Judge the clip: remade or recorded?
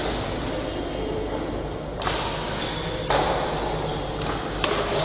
recorded